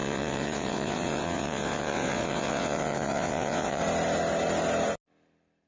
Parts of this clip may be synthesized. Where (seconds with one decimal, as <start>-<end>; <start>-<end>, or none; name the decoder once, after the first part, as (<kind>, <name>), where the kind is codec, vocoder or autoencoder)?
0.0-3.8 (vocoder, WaveNeXt)